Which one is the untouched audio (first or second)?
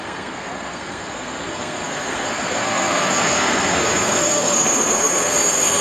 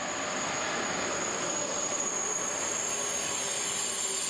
second